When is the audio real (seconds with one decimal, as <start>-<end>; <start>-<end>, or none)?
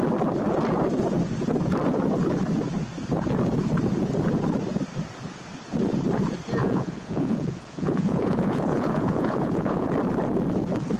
0.0-6.6; 9.9-11.0